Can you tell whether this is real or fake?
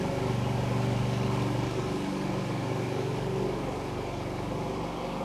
fake